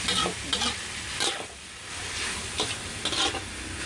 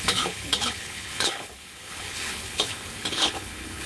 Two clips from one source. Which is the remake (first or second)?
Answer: second